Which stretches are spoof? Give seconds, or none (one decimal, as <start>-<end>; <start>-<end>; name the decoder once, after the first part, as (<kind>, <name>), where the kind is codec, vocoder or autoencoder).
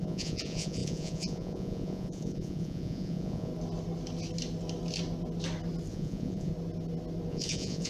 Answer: 0.0-3.5 (vocoder, Vocos); 5.9-6.5; 7.3-7.9